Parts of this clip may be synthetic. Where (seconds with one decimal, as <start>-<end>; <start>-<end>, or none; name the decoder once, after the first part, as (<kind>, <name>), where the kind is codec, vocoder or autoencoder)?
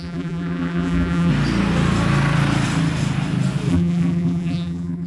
0.0-1.3 (vocoder, BigVGAN v2); 3.7-5.1